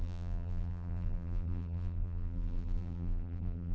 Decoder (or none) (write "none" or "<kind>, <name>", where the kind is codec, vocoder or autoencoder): vocoder, BigVGAN v2